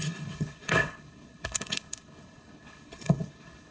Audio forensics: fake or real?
fake